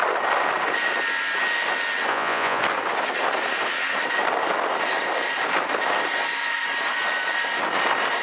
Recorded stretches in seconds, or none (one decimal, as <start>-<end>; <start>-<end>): 0.0-2.1; 2.6-8.2